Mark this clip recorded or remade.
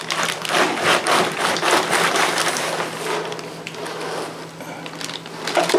recorded